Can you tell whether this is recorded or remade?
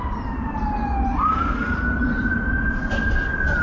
recorded